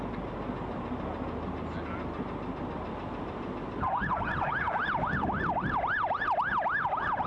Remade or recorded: recorded